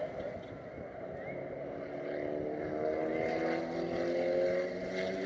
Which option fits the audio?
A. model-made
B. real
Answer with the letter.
B